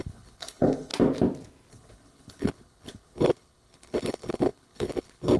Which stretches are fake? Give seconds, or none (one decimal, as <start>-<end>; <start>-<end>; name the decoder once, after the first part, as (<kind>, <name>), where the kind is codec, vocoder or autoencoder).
0.0-0.9 (codec, HILCodec); 1.7-5.4